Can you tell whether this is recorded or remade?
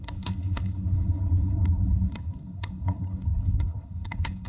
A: remade